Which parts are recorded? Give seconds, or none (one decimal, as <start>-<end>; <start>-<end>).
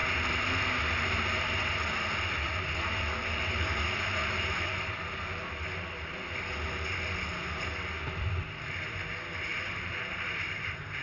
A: 0.0-4.2; 5.2-9.5